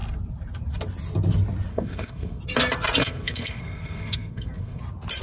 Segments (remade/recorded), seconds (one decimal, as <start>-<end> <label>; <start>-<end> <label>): 0.0-1.7 recorded; 1.7-2.4 remade; 2.4-3.0 recorded; 3.0-4.8 remade; 4.8-5.2 recorded